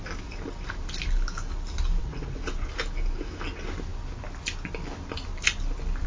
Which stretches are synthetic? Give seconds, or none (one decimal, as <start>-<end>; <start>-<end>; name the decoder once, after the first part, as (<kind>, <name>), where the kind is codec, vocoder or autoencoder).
2.0-2.7 (vocoder, WaveNeXt)